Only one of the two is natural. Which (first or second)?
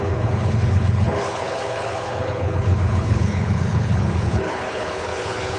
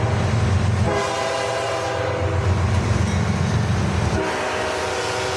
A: second